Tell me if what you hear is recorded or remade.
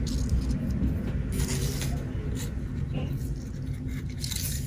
recorded